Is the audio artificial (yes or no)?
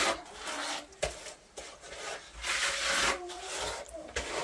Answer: no